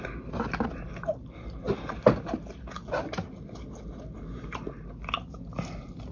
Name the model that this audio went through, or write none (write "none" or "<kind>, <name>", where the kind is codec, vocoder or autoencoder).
none